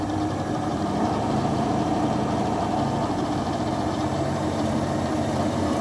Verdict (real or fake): fake